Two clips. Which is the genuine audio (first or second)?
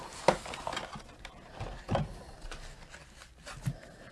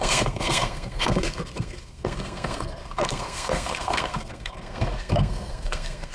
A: first